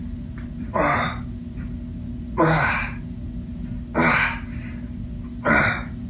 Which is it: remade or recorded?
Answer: recorded